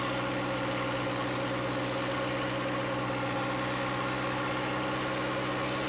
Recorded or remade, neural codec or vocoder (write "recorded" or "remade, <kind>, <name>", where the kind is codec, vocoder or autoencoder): recorded